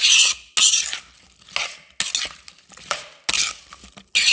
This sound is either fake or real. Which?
real